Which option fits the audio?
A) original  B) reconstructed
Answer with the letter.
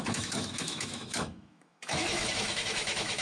B